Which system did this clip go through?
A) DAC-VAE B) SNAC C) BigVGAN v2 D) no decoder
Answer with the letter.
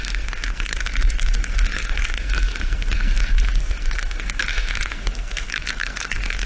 B